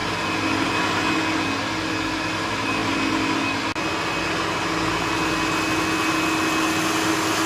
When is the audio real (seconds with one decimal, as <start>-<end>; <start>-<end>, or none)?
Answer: 0.0-7.5